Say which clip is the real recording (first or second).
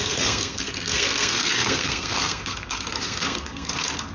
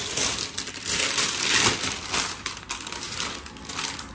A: second